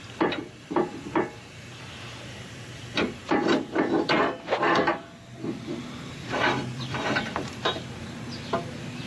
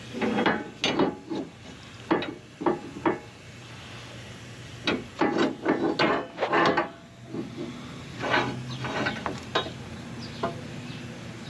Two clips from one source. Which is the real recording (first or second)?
second